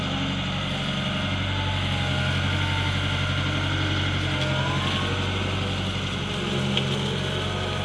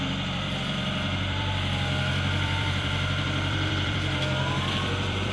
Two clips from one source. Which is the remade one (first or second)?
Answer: second